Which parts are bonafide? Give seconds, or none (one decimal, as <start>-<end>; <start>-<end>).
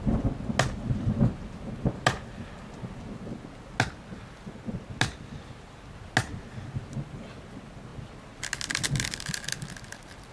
0.0-10.3